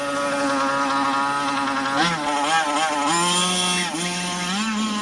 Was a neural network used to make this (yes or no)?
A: no